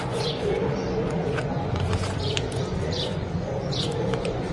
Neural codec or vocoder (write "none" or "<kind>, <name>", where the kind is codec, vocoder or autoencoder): vocoder, Vocos